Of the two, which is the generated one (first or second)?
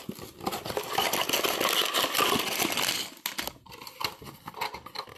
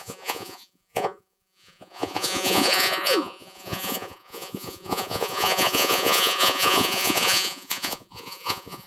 second